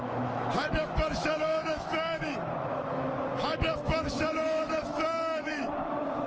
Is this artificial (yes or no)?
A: yes